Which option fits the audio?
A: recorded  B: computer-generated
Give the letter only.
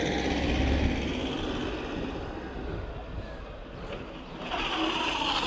A